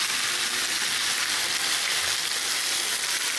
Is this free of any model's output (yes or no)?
yes